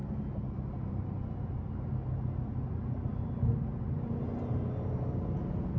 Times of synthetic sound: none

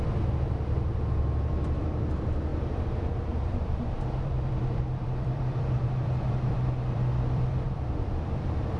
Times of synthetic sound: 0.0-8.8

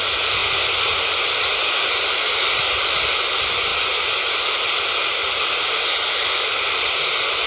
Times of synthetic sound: 0.4-2.6; 5.2-5.9